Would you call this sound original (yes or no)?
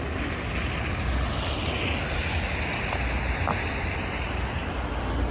yes